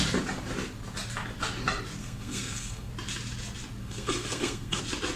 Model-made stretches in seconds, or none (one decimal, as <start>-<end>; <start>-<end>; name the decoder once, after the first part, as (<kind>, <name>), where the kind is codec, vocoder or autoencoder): 2.0-2.9 (codec, SNAC); 3.8-4.8